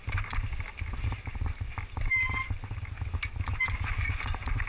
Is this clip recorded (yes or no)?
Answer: yes